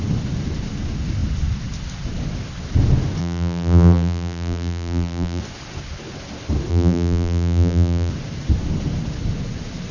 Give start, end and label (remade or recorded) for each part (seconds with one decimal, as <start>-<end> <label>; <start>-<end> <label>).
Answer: 0.0-3.2 recorded; 3.2-5.4 remade; 5.4-6.7 recorded; 6.7-8.1 remade; 8.1-9.9 recorded